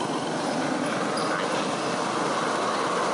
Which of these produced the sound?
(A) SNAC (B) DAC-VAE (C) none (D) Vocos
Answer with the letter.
C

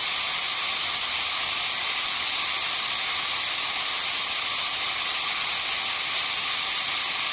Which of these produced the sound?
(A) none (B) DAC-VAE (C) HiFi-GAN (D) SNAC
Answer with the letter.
A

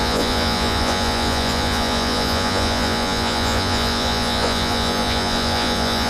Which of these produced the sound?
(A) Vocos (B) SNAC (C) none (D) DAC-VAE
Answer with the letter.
A